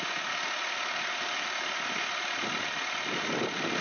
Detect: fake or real real